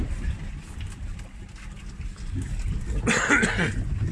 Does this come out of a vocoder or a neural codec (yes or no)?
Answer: no